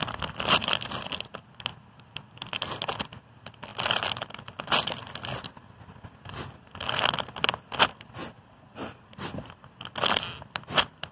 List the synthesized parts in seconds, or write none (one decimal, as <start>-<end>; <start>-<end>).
0.6-1.1